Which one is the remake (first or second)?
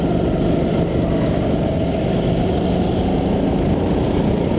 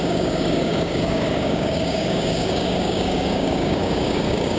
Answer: second